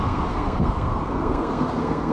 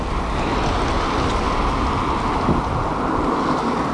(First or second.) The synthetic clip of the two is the first